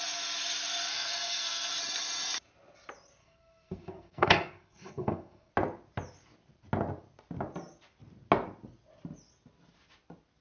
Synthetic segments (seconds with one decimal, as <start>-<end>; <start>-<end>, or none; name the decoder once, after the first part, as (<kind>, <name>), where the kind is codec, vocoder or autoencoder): 0.9-1.7 (codec, SNAC); 3.2-5.5